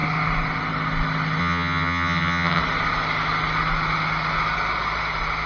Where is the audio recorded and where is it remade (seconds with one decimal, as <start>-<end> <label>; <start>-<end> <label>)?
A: 0.0-1.4 recorded; 1.4-2.6 remade; 2.6-5.5 recorded